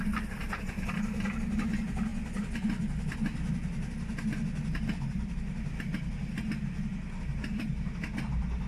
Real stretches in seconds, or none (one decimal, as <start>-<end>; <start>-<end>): 0.0-8.7